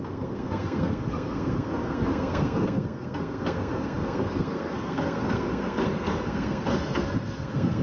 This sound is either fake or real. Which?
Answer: fake